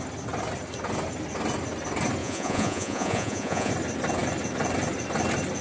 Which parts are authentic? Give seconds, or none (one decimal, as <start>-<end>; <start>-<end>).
0.0-2.2; 3.7-5.6